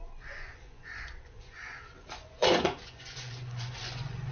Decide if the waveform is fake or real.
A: fake